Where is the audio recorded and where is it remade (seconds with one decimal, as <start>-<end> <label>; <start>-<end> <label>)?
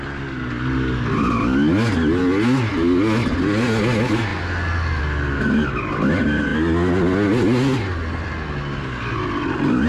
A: 0.0-9.9 recorded